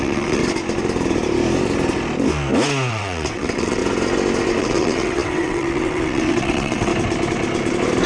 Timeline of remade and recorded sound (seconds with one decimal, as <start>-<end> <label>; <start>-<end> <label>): 0.0-0.4 remade; 0.4-2.9 recorded; 2.9-3.8 remade; 3.8-4.6 recorded; 4.6-6.9 remade; 6.9-8.1 recorded